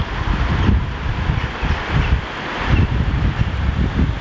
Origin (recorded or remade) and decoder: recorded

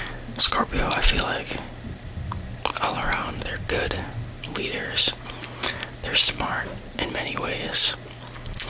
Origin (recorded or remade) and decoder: recorded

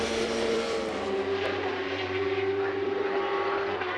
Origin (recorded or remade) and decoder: remade, vocoder, BigVGAN v2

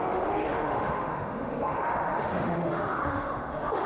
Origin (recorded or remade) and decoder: remade, autoencoder, DAC-VAE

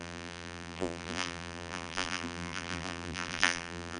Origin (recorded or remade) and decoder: remade, vocoder, BigVGAN v2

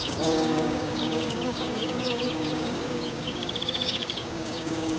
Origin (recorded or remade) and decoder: remade, codec, DAC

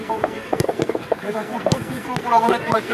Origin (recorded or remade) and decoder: remade, codec, SNAC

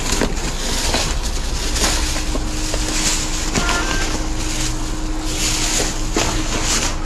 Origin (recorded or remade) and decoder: recorded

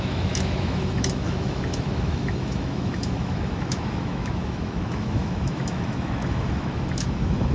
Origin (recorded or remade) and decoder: remade, autoencoder, DAC-VAE